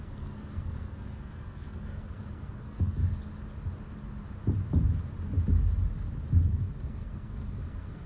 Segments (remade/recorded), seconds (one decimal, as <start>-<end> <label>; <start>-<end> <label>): 0.0-3.0 remade; 3.0-6.4 recorded; 6.4-8.1 remade